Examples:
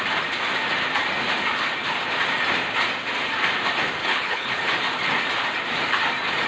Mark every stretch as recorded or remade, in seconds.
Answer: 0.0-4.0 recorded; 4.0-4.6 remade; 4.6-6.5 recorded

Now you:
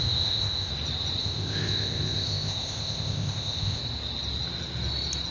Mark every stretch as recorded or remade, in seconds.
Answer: 0.0-0.7 remade; 0.7-1.2 recorded; 1.2-3.8 remade; 3.8-5.3 recorded

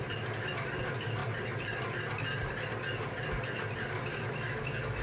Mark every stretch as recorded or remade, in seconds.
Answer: 0.0-4.1 recorded; 4.1-5.0 remade

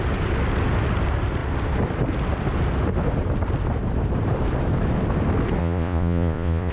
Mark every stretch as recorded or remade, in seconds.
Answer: 0.0-5.6 recorded; 5.6-6.7 remade